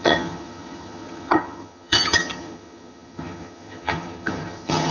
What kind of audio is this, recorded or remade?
remade